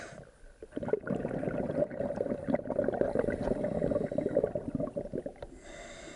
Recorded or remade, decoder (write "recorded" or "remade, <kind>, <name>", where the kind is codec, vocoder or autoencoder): recorded